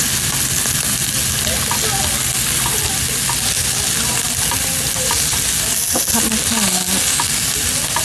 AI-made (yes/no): no